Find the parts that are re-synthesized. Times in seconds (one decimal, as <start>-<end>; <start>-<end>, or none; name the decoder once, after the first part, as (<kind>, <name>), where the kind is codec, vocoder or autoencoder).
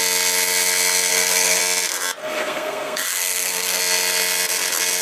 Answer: 1.1-1.6 (codec, SNAC); 2.2-3.8